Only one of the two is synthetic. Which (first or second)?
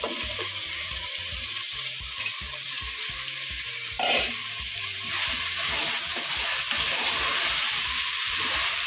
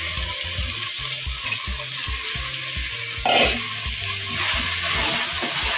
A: first